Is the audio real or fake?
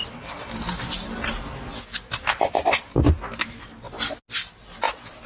real